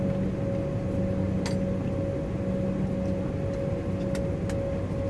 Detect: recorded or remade recorded